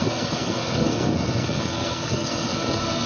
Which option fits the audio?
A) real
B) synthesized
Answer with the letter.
B